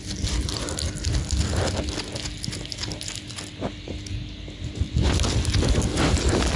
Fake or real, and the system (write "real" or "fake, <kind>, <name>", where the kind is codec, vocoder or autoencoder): real